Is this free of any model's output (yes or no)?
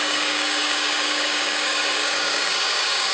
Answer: no